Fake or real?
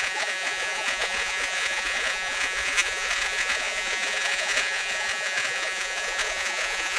fake